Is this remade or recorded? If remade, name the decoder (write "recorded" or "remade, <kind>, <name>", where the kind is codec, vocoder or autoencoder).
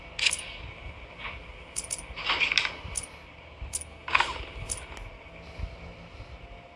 recorded